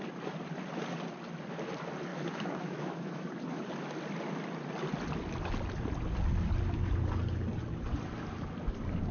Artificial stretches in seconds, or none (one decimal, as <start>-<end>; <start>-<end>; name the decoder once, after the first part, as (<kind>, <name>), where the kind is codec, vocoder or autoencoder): 2.1-3.3 (autoencoder, DAC-VAE)